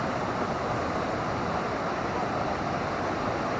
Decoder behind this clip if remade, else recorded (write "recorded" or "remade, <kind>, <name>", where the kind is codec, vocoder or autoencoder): recorded